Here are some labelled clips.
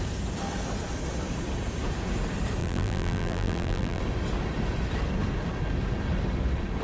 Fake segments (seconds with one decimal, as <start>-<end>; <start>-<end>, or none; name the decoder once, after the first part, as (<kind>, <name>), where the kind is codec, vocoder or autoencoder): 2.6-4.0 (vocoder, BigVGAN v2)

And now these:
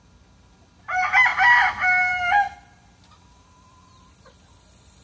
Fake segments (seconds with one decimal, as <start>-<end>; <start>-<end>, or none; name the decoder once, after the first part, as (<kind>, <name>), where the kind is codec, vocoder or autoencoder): none

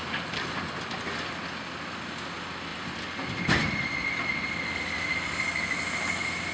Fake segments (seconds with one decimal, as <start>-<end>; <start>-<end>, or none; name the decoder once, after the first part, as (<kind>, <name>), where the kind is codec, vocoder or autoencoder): none